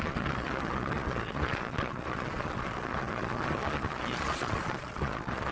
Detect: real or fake fake